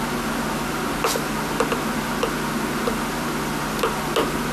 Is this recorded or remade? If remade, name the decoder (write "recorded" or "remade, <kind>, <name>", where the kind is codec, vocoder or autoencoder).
recorded